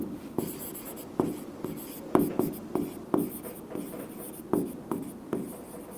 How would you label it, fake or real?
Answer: real